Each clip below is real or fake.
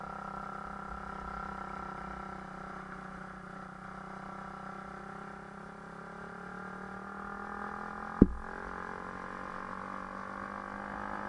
real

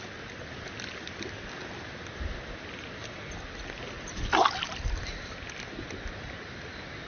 real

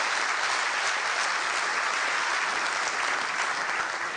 real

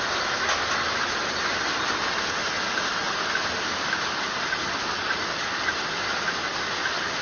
real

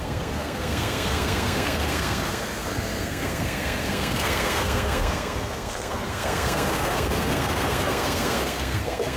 fake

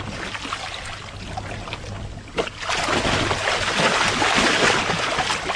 real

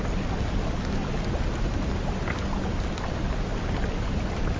real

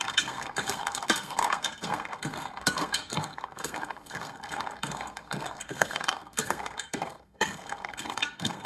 fake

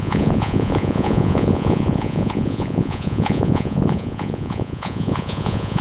fake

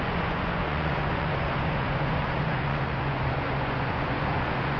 fake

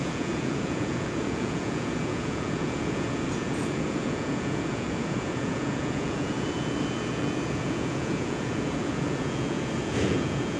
fake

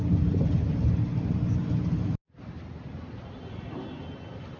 real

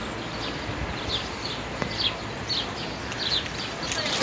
real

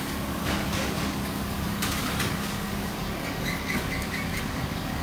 fake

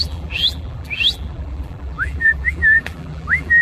fake